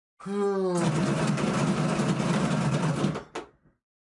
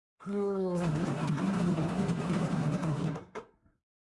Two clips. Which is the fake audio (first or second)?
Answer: second